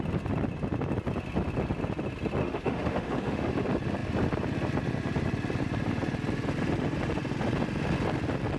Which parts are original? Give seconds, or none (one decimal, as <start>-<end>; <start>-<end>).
0.0-2.4; 3.5-8.6